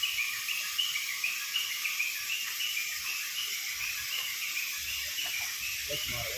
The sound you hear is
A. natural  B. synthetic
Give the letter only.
A